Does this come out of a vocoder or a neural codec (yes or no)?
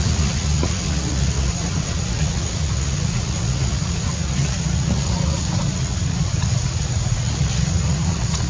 yes